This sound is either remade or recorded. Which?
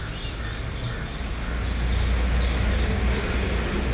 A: recorded